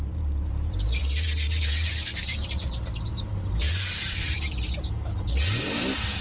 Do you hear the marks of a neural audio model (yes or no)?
yes